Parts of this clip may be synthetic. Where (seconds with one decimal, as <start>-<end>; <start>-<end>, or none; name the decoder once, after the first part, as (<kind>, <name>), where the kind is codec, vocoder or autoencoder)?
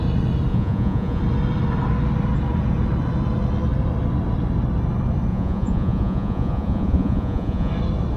0.5-1.2 (vocoder, Vocos); 5.3-7.7